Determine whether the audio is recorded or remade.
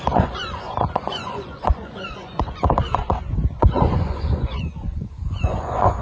remade